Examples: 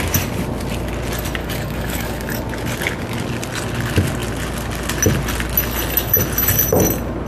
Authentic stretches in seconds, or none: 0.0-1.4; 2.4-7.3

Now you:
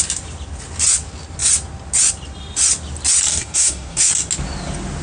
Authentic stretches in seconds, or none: 0.0-3.3; 4.1-5.0

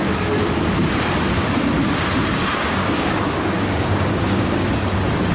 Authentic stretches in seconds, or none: 0.0-2.3; 4.7-5.3

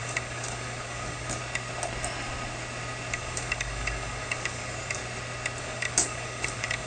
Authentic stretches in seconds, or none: 1.4-3.1; 5.0-5.6

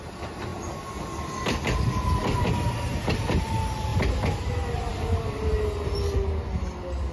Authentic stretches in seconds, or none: 0.0-7.1

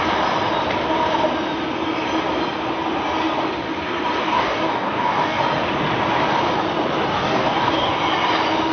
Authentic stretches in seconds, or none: 0.0-4.2; 5.4-7.1; 7.9-8.7

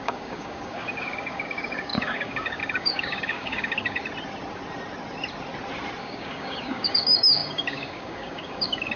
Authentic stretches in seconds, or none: 4.0-6.0